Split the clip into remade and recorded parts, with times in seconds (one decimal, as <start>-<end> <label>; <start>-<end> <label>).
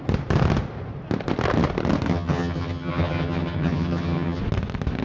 0.0-2.1 recorded; 2.1-4.4 remade; 4.4-5.0 recorded